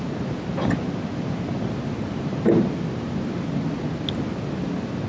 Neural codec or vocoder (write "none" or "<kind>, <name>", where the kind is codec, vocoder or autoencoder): none